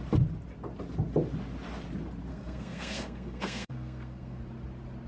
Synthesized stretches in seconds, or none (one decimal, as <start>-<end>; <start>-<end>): 2.3-4.4